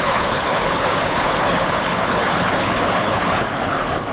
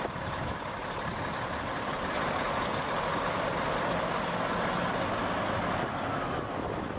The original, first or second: second